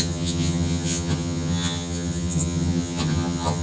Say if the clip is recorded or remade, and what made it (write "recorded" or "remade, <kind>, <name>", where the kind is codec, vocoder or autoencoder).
remade, vocoder, HiFi-GAN